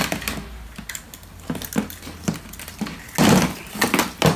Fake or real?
real